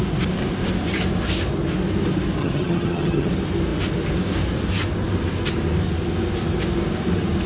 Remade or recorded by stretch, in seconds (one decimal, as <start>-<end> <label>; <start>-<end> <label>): 0.0-2.4 recorded; 2.4-3.3 remade; 3.3-7.5 recorded